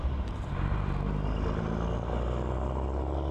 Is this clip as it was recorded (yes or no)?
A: yes